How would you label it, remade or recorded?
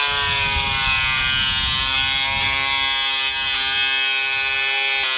recorded